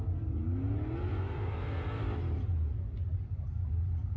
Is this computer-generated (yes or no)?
no